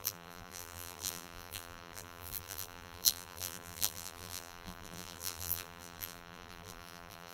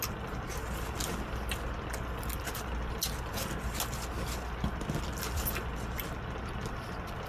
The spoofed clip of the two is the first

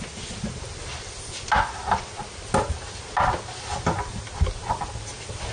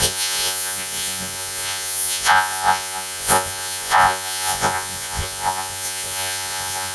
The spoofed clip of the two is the second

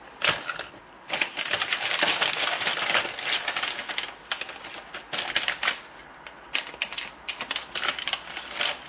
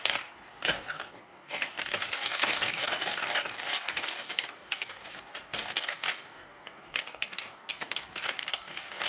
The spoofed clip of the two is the second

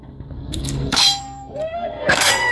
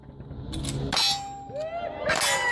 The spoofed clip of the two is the first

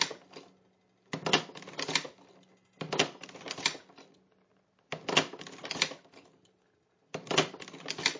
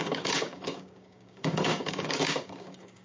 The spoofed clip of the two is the second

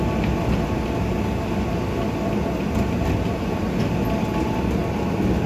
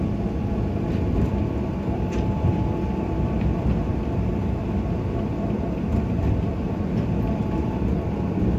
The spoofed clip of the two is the second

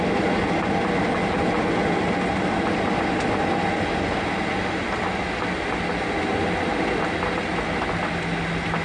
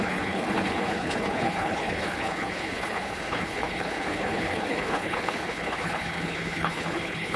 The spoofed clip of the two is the second